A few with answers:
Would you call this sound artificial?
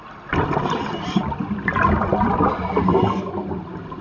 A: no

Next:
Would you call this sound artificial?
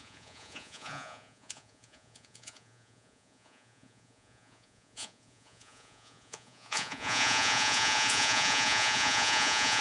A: yes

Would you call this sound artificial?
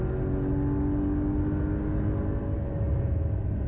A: no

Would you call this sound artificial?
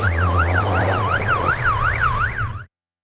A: yes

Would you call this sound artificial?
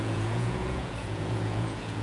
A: yes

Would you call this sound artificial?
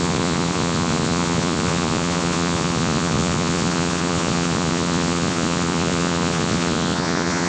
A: yes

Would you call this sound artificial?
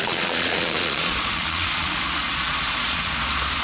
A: yes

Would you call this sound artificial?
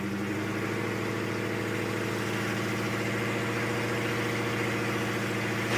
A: no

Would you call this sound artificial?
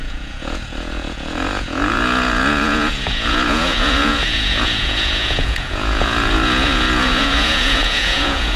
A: yes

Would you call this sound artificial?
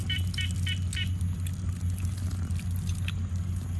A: no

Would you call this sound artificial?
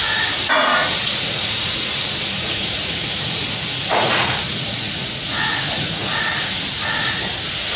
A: yes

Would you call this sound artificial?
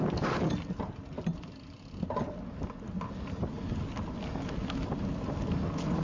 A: no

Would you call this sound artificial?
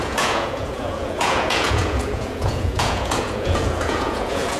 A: yes